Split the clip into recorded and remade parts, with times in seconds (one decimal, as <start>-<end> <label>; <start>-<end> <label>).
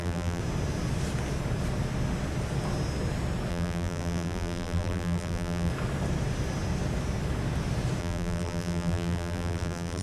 0.0-0.4 remade; 0.4-3.5 recorded; 3.5-5.7 remade; 5.7-8.0 recorded; 8.0-10.0 remade